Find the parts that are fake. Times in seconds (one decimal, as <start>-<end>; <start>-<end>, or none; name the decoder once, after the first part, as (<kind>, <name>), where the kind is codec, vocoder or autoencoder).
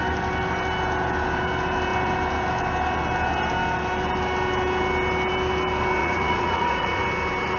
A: 6.0-7.0 (vocoder, Vocos)